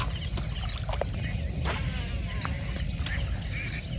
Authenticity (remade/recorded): recorded